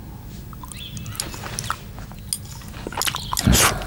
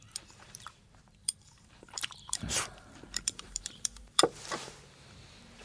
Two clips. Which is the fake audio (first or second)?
second